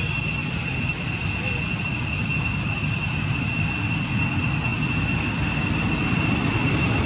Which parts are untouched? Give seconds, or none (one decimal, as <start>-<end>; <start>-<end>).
0.0-4.7; 6.3-7.1